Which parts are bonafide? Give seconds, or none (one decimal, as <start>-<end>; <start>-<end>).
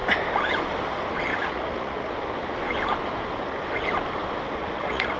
0.0-1.3; 2.1-4.6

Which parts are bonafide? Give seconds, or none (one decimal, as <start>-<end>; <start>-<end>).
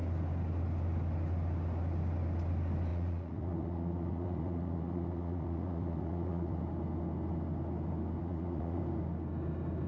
0.0-2.9; 6.6-8.2; 8.8-9.9